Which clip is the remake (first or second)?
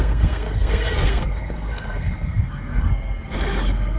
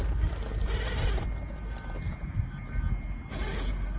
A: first